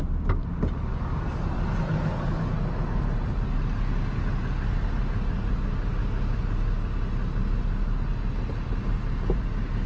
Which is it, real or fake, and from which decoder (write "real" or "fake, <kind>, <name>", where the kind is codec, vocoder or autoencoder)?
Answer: real